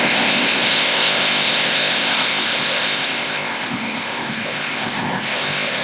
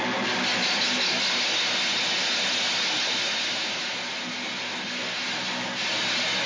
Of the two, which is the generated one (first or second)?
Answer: first